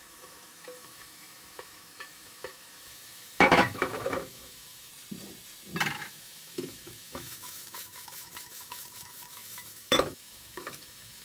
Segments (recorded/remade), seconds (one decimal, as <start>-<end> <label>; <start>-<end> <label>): 0.0-4.9 remade; 4.9-5.9 recorded; 5.9-11.2 remade